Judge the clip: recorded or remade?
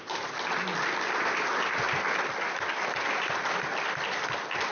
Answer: recorded